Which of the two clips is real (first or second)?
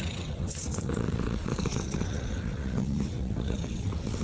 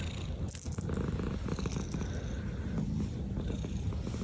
second